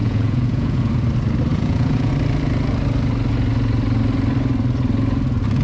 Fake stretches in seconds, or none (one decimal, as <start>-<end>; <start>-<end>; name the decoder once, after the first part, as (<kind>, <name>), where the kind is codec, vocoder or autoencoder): 0.0-0.9 (vocoder, Vocos); 1.5-2.1